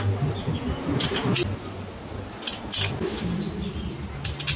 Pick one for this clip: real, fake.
real